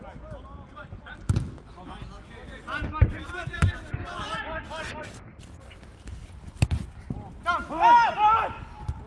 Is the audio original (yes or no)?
yes